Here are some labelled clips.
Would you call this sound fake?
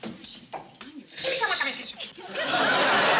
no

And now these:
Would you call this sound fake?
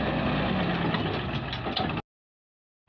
no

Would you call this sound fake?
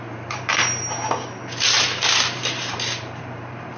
yes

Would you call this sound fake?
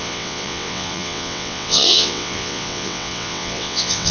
yes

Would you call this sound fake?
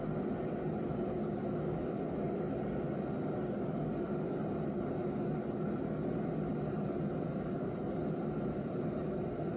no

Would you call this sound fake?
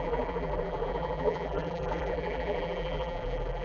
yes